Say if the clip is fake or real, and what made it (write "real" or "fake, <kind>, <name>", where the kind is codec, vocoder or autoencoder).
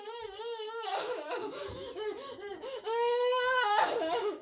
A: fake, autoencoder, DAC-VAE